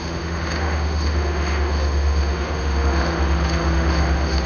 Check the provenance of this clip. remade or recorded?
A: remade